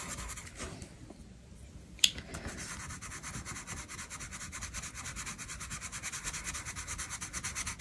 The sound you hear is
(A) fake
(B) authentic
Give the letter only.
B